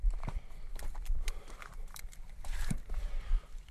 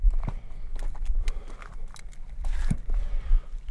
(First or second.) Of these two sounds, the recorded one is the second